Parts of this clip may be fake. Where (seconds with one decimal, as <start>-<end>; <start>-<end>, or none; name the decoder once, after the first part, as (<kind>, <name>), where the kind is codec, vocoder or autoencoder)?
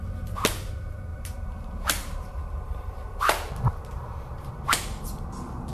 1.1-4.5 (vocoder, BigVGAN v2)